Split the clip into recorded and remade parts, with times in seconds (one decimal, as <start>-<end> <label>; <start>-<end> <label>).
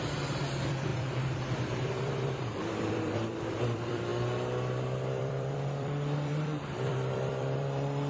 0.0-4.1 remade; 4.1-5.2 recorded; 5.2-8.1 remade